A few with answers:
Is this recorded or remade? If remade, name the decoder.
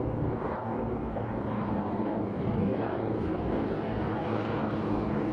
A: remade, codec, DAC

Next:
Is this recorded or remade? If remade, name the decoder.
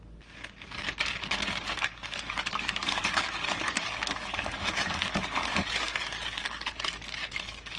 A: remade, codec, DAC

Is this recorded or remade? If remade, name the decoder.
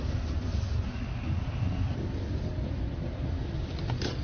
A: recorded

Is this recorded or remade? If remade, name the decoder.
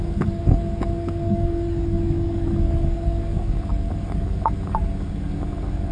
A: remade, codec, DAC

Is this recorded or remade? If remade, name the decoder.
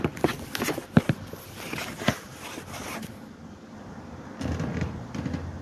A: recorded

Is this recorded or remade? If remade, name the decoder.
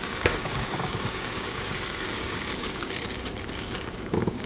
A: remade, codec, DAC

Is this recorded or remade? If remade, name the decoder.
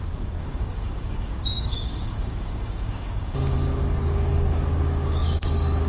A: remade, codec, DAC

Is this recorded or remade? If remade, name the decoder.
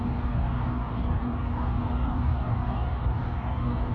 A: remade, codec, DAC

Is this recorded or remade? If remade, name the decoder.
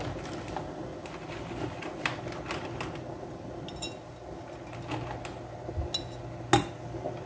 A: recorded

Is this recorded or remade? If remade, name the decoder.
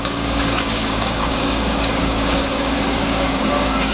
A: remade, codec, DAC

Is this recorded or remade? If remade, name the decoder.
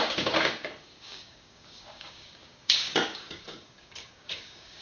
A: remade, codec, DAC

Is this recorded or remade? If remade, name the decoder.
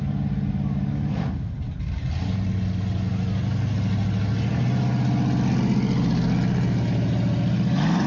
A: recorded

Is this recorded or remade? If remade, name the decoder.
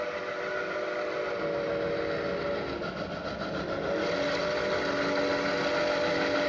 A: recorded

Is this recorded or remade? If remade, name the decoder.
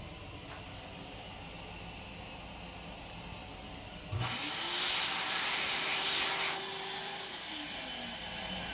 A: recorded